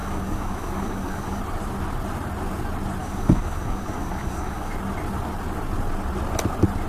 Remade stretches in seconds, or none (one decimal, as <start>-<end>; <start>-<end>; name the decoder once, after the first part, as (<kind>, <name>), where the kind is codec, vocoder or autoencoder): 0.0-1.4 (codec, DAC); 3.0-4.7